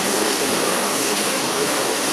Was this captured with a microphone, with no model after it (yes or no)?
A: no